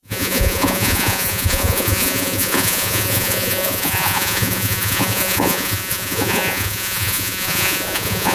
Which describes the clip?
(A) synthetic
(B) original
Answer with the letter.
A